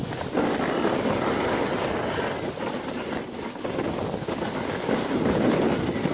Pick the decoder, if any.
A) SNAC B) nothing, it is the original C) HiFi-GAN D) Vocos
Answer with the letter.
B